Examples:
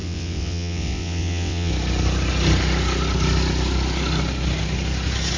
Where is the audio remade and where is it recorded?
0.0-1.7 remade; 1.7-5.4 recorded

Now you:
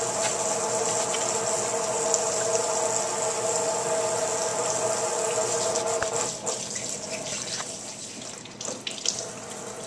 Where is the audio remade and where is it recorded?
0.0-9.9 recorded

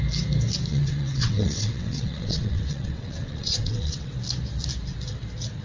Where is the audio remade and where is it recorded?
0.0-0.7 recorded; 0.7-4.1 remade; 4.1-5.6 recorded